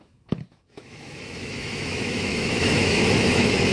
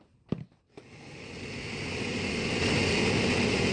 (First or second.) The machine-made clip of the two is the first